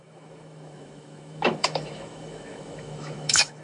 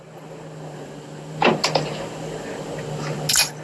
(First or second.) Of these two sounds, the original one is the second